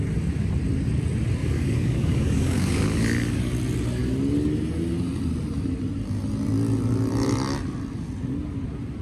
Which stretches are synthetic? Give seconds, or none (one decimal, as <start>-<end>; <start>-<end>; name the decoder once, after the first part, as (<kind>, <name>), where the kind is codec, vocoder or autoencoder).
1.4-3.4 (codec, DAC)